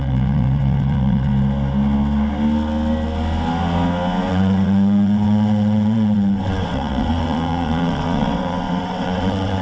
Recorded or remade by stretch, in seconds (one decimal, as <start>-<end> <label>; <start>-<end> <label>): 0.0-1.3 remade; 1.3-4.3 recorded; 4.3-9.6 remade